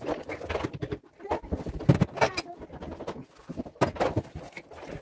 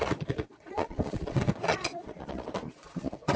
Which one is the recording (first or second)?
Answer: first